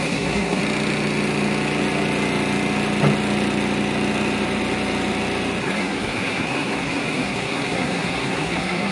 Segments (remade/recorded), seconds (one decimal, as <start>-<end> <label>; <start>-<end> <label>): 0.0-0.6 remade; 0.6-5.6 recorded; 5.6-8.9 remade